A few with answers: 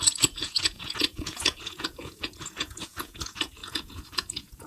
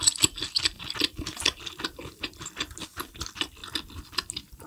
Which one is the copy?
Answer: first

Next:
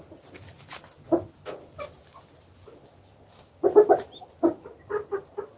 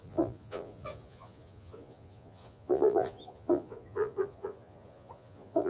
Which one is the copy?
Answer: second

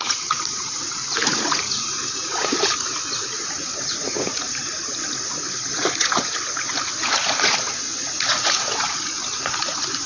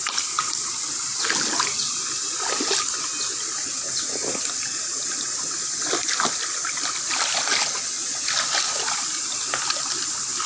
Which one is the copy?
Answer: first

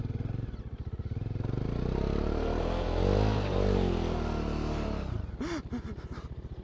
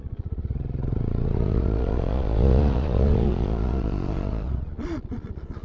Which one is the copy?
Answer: second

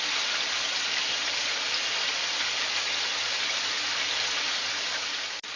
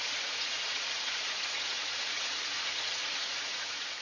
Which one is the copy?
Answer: second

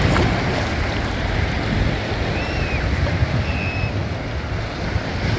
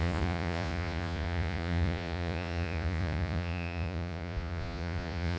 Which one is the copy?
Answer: second